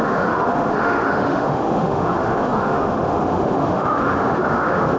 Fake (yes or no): yes